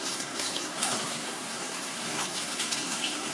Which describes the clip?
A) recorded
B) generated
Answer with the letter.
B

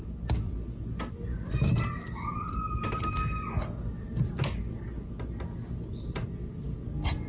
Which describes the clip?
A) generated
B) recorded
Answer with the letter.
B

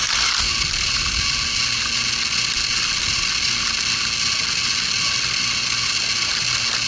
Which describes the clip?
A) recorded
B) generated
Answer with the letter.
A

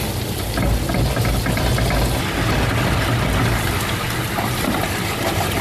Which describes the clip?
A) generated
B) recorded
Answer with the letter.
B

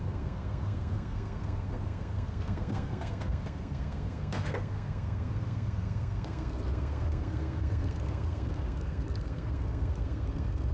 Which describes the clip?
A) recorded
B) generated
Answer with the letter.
B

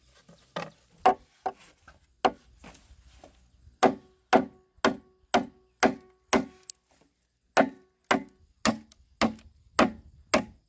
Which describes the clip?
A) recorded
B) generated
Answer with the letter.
A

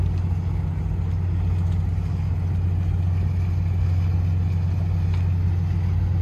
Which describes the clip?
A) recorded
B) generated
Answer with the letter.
A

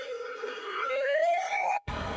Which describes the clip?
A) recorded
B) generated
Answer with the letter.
B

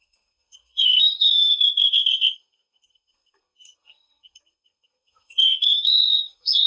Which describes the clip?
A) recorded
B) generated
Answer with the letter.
B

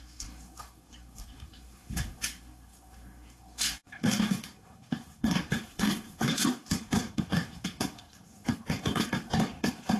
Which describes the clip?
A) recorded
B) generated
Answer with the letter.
B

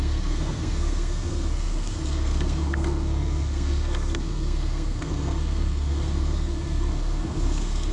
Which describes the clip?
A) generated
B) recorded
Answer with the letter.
A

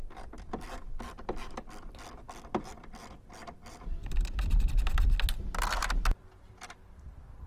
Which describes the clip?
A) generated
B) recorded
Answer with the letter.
B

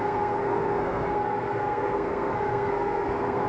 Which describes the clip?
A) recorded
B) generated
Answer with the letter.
B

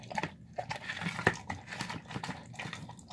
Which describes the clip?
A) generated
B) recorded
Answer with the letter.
B